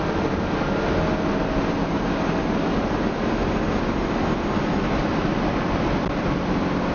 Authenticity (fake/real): real